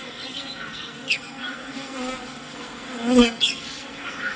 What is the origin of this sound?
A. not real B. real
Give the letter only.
A